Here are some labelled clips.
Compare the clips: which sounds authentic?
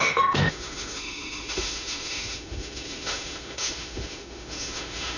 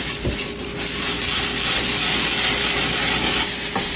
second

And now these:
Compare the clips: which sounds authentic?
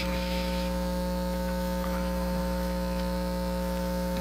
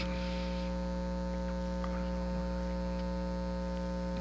second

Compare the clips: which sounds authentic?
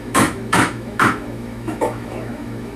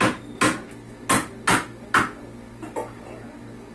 second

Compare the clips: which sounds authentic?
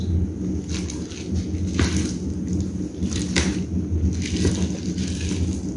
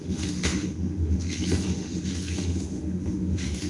first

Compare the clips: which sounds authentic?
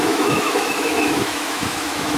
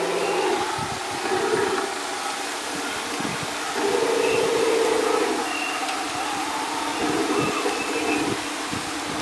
second